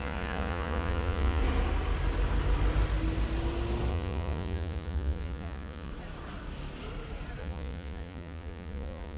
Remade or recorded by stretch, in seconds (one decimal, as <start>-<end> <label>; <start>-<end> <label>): 0.0-1.4 remade; 1.4-3.9 recorded; 3.9-5.9 remade; 5.9-7.4 recorded; 7.4-9.2 remade

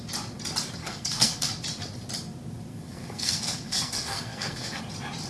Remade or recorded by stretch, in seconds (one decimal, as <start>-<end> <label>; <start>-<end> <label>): 0.0-0.8 recorded; 0.8-1.5 remade; 1.5-2.7 recorded; 2.7-4.8 remade; 4.8-5.3 recorded